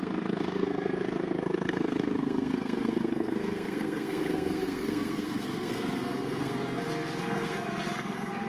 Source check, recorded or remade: remade